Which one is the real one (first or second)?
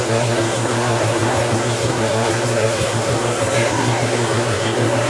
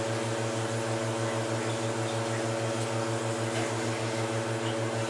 second